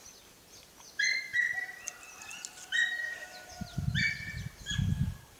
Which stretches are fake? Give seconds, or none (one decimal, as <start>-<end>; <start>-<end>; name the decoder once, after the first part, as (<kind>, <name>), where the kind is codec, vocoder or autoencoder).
none

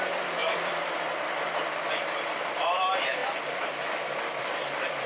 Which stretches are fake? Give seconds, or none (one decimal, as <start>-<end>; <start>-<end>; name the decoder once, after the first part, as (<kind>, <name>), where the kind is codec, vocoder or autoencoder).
0.0-3.2 (vocoder, BigVGAN v2); 4.4-5.1

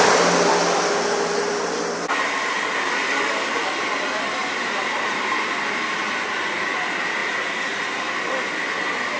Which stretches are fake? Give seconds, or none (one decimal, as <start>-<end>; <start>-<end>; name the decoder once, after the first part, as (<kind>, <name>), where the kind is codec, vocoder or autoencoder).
4.4-6.8 (vocoder, BigVGAN v2); 7.2-8.0

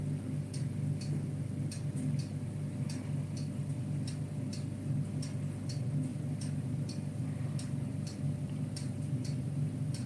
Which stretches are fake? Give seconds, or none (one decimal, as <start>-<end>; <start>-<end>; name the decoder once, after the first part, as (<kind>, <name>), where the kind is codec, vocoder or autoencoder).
6.1-10.1 (vocoder, BigVGAN v2)